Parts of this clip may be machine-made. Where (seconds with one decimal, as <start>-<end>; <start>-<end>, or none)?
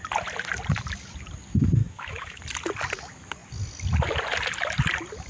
1.8-2.4